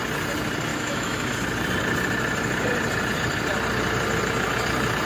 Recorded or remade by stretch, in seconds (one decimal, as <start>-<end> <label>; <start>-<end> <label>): 0.0-0.7 recorded; 0.7-1.3 remade; 1.3-5.1 recorded